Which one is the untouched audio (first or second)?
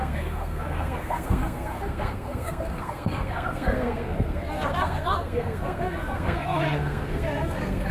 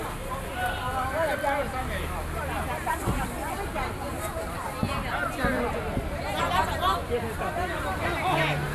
second